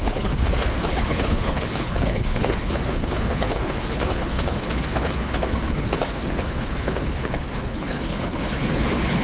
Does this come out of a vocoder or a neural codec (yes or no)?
yes